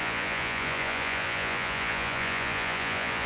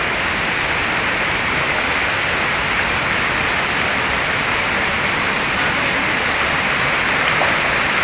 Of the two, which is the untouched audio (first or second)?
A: second